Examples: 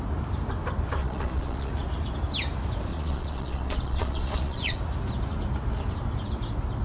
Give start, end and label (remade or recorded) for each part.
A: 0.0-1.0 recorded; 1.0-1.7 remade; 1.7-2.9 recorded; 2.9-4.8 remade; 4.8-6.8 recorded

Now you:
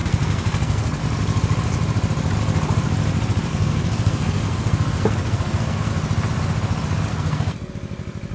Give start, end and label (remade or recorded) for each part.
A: 0.0-1.0 remade; 1.0-3.5 recorded; 3.5-5.9 remade; 5.9-7.1 recorded; 7.1-7.7 remade; 7.7-8.3 recorded

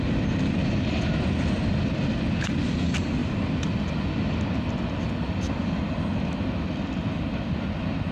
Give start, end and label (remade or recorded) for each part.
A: 0.0-8.1 recorded